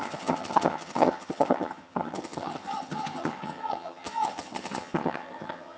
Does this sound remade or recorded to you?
remade